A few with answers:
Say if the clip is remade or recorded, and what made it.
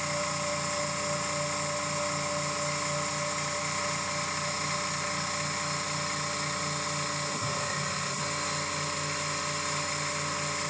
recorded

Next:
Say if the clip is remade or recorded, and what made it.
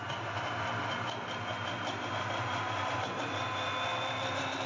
recorded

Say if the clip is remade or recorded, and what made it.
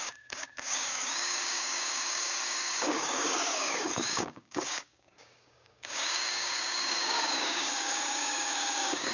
remade, codec, DAC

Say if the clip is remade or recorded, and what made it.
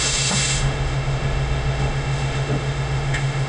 remade, autoencoder, DAC-VAE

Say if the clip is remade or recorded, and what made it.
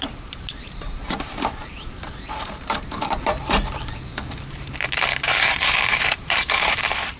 remade, vocoder, BigVGAN v2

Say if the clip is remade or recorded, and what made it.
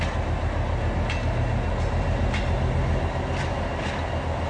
recorded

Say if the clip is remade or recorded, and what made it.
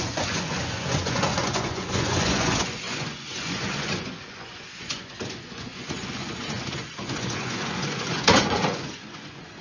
remade, vocoder, Vocos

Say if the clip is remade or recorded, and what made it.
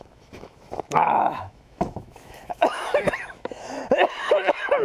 remade, autoencoder, DAC-VAE